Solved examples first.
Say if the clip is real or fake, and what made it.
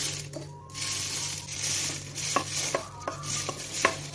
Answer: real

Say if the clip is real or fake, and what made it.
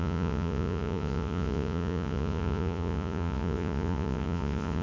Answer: fake, vocoder, Vocos